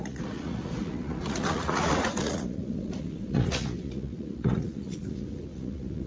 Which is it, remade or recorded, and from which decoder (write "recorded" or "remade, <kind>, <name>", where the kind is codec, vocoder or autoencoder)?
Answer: remade, vocoder, Vocos